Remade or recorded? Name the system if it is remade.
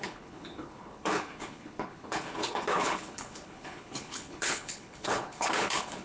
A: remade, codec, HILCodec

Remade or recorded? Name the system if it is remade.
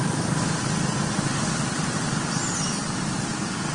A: recorded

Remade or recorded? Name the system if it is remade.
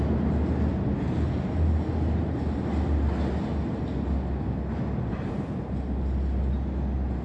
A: recorded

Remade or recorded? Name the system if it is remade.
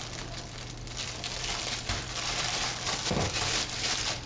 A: recorded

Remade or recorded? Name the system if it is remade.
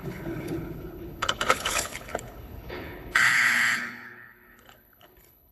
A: remade, codec, HILCodec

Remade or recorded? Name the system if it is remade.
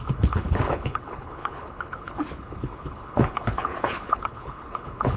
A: remade, codec, HILCodec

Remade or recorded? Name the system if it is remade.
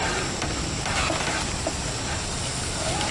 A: recorded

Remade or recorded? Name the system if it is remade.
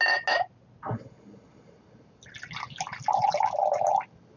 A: recorded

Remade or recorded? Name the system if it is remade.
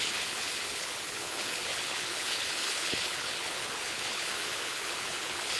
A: remade, codec, HILCodec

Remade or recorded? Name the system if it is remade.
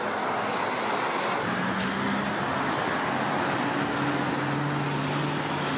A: recorded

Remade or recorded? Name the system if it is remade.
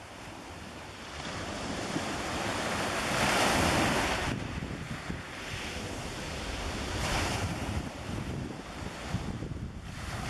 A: recorded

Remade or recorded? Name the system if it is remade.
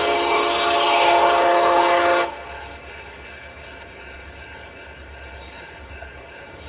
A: remade, codec, HILCodec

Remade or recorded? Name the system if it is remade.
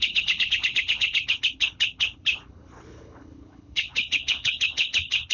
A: remade, codec, HILCodec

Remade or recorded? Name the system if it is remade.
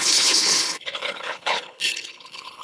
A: remade, codec, HILCodec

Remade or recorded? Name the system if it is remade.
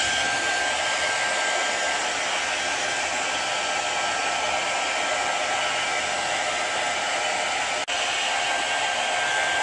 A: recorded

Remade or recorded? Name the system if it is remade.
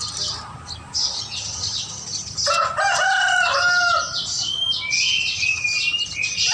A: recorded